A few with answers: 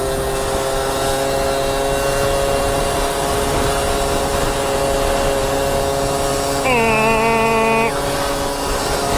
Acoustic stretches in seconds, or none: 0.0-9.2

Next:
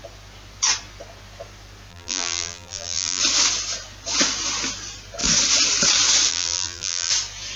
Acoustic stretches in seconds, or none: 0.0-1.9; 3.2-6.3; 7.1-7.6